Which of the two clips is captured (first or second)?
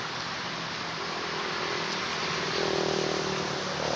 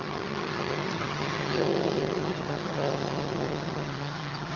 first